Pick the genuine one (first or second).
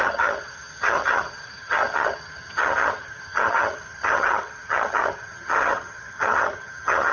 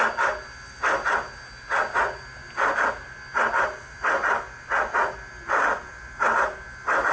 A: second